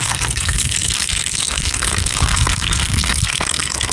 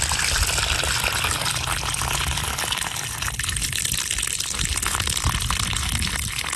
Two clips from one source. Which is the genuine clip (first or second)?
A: second